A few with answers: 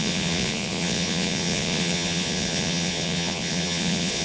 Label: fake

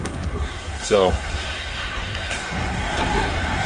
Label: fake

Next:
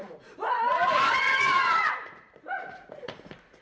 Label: fake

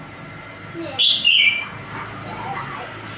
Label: real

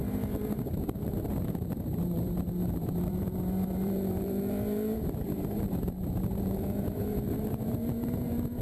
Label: fake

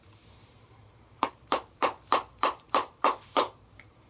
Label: fake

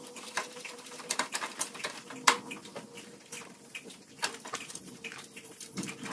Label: fake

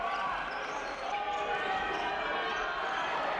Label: real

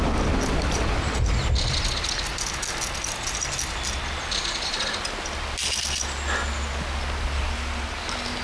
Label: real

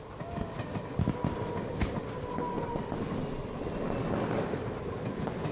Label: real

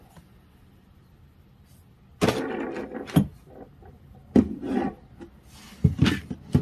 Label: real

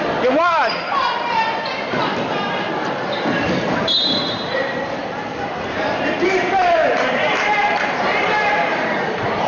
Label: fake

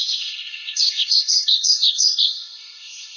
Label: fake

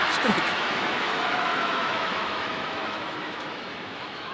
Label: fake